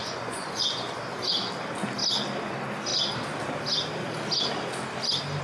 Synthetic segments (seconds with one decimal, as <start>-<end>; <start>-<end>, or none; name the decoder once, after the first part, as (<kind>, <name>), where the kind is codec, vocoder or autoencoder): 0.0-1.0 (vocoder, Vocos)

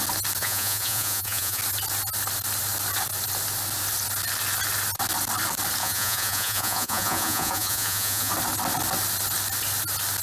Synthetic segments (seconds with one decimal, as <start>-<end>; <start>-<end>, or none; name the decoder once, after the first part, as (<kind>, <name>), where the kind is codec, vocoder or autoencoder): 0.4-1.6 (vocoder, Vocos); 5.8-8.3